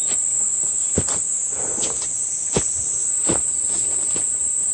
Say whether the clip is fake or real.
real